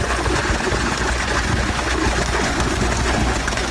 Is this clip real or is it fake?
fake